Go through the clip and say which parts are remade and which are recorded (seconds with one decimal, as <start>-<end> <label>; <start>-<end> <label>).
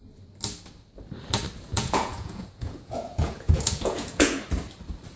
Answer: 0.0-1.7 recorded; 1.7-4.4 remade; 4.4-5.2 recorded